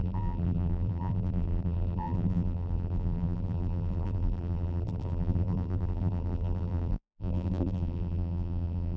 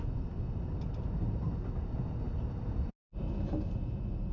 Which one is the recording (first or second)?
second